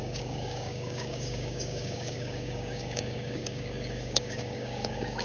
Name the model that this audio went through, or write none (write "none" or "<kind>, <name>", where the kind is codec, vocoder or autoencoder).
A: codec, DAC